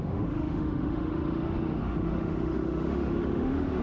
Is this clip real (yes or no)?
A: no